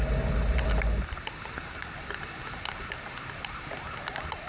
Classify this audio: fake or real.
real